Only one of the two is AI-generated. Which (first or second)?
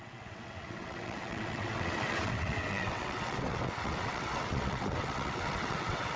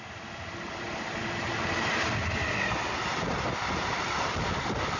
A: first